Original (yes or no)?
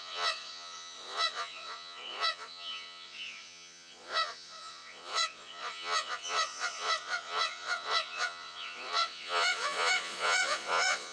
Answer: no